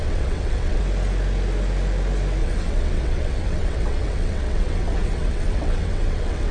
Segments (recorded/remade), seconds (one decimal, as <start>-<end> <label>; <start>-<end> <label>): 0.0-0.8 remade; 0.8-2.4 recorded; 2.4-6.5 remade